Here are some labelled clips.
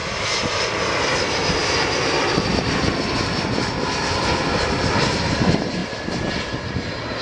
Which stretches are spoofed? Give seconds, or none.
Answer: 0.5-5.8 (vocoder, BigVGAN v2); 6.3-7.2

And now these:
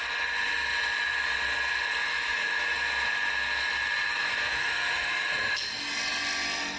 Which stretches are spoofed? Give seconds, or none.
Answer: 2.0-2.5 (autoencoder, DAC-VAE); 4.1-5.5